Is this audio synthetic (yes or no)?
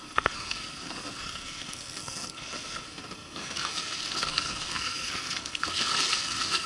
yes